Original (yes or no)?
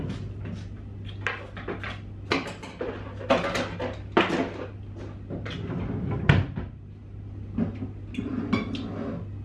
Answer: yes